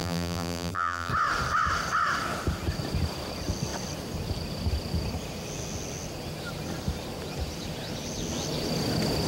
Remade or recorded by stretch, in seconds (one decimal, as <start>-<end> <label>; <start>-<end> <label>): 0.0-1.1 remade; 1.1-9.3 recorded